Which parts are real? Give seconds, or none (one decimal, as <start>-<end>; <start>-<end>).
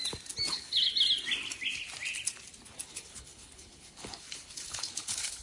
0.0-0.5; 0.9-2.9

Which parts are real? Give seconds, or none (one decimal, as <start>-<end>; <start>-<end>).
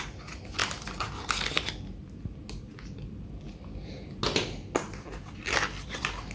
0.0-6.3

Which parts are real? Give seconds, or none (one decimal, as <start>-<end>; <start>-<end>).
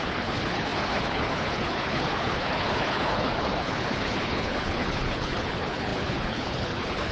none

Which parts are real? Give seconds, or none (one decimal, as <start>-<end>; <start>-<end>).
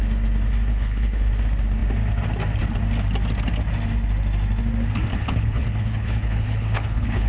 0.0-0.7; 1.3-5.1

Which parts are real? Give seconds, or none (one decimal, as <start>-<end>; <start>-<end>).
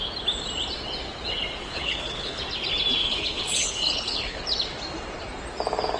0.0-1.6; 2.4-3.0; 4.4-6.0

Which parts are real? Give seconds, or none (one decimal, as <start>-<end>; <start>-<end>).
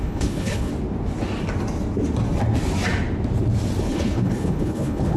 0.7-3.8